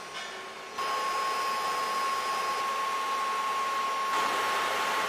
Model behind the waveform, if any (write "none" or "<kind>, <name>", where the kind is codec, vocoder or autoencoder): none